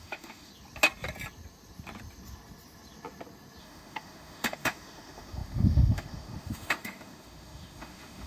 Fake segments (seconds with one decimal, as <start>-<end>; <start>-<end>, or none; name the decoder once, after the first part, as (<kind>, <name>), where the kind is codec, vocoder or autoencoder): 0.0-0.5 (autoencoder, DAC-VAE); 3.6-8.3